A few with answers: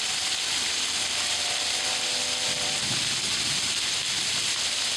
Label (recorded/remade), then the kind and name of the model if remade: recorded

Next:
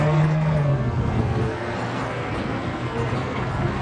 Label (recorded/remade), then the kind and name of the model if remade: remade, codec, SNAC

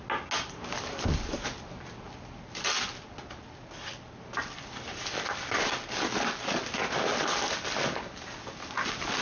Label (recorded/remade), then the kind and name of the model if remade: recorded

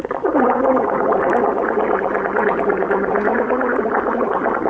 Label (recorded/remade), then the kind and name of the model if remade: recorded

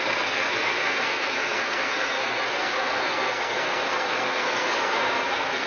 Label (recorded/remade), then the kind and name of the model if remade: remade, codec, SNAC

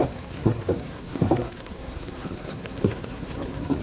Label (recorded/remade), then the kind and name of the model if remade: remade, codec, SNAC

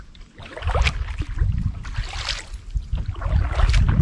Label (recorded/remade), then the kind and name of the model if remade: recorded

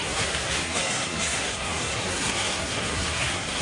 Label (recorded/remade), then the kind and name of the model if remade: remade, codec, SNAC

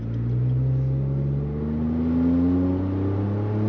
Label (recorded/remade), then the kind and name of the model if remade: recorded